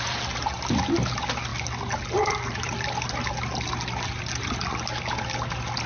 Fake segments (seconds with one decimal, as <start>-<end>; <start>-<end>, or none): none